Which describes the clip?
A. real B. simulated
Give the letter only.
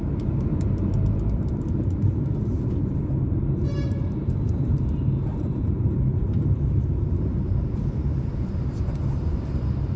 B